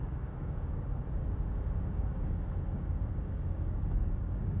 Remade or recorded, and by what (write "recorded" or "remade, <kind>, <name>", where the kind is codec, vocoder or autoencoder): remade, codec, DAC